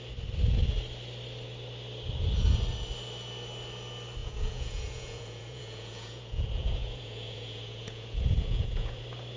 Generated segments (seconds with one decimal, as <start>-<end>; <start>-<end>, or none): 4.2-9.0